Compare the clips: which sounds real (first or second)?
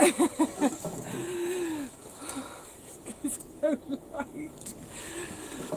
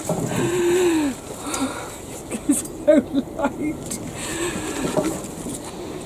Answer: second